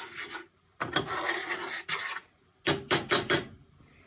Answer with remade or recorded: recorded